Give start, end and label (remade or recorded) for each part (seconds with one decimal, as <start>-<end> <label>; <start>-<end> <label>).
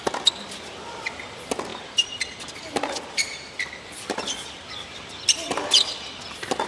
0.0-1.7 recorded; 1.7-2.3 remade; 2.3-6.7 recorded